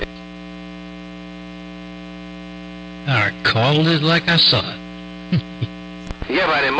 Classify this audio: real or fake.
real